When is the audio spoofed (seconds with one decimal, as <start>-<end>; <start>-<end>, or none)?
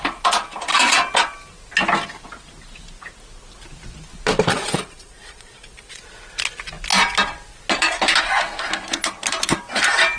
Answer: 4.5-6.0